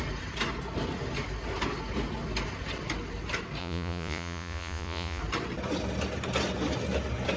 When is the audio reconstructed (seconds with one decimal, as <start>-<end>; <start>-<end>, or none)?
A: 3.6-5.2